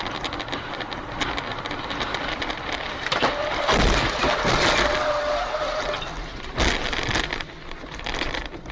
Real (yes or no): yes